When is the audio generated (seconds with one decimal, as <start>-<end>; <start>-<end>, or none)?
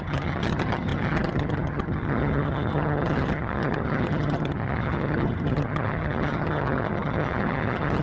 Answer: 0.0-8.0